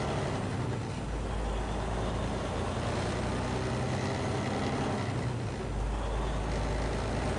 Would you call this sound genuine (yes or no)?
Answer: yes